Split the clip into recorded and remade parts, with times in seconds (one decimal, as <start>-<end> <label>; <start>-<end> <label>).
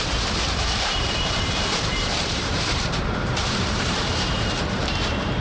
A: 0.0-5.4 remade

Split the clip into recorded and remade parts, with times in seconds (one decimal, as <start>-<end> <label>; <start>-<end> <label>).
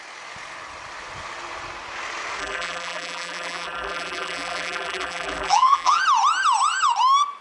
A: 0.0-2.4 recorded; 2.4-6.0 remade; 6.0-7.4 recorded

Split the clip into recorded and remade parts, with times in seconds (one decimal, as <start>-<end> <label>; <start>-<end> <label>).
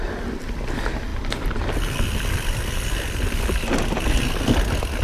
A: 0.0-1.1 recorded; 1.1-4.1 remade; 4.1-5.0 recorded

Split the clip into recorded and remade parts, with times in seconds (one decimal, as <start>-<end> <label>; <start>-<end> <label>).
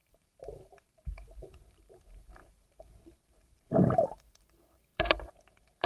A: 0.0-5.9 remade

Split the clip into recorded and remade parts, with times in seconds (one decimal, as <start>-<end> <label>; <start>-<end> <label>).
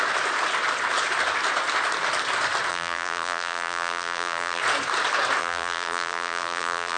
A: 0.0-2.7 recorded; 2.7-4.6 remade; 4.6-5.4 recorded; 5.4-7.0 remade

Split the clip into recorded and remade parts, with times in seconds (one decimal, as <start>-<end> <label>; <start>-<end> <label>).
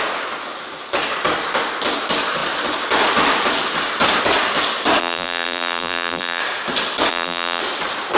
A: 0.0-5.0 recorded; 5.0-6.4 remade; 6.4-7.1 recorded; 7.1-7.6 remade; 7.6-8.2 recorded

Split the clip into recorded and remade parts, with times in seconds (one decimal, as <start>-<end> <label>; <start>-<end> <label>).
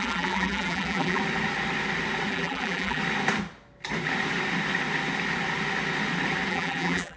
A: 0.0-1.2 remade; 1.2-2.3 recorded; 2.3-3.0 remade; 3.0-6.5 recorded; 6.5-7.2 remade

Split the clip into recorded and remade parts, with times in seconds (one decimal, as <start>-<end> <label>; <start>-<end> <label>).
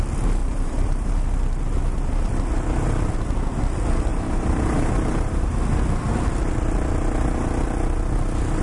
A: 0.0-0.4 recorded; 0.4-1.1 remade; 1.1-4.1 recorded; 4.1-5.6 remade; 5.6-8.6 recorded